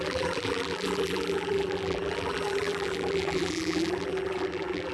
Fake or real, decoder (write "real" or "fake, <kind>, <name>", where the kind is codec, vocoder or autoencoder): fake, vocoder, BigVGAN v2